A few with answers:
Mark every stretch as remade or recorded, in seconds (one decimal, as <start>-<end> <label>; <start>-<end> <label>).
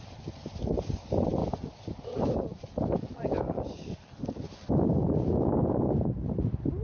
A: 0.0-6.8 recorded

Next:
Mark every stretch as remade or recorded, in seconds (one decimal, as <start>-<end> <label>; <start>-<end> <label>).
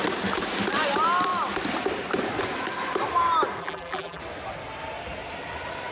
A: 0.0-3.6 recorded; 3.6-4.2 remade; 4.2-5.9 recorded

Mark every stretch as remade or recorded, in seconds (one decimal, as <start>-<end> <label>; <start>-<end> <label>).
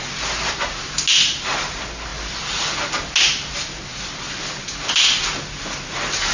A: 0.0-6.3 recorded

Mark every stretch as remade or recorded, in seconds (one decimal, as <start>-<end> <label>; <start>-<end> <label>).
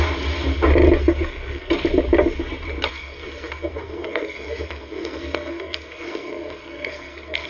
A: 0.0-1.0 recorded; 1.0-1.7 remade; 1.7-2.9 recorded; 2.9-7.5 remade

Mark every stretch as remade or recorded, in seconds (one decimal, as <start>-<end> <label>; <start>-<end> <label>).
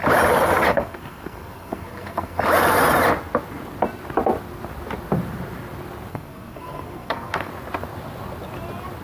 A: 0.0-0.7 recorded; 0.7-2.4 remade; 2.4-6.1 recorded; 6.1-7.5 remade; 7.5-9.0 recorded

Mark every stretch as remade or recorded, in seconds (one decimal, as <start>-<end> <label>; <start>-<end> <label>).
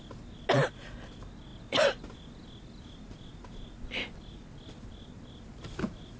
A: 0.0-1.5 recorded; 1.5-5.2 remade; 5.2-6.2 recorded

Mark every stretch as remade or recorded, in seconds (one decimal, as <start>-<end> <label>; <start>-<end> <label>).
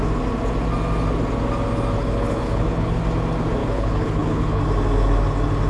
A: 0.0-2.0 recorded; 2.0-3.0 remade; 3.0-3.6 recorded; 3.6-4.6 remade; 4.6-5.7 recorded